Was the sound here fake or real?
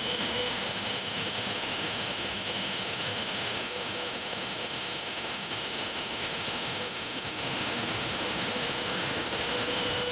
fake